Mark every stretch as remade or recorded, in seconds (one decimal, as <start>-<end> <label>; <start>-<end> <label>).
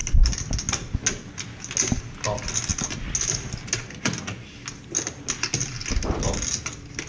0.0-7.1 recorded